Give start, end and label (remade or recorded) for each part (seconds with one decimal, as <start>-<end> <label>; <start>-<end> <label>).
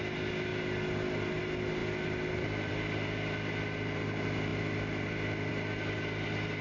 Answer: 0.0-6.6 recorded